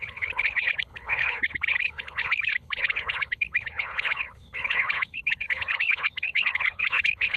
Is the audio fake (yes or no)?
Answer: yes